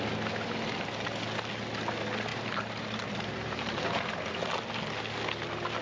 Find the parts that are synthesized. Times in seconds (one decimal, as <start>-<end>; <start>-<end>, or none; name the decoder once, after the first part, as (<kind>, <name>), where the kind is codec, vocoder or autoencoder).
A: 2.3-3.8 (vocoder, BigVGAN v2)